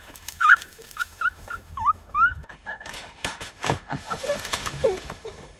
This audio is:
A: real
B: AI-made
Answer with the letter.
B